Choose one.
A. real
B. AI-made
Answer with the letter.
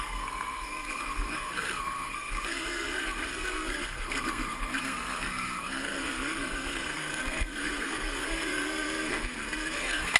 B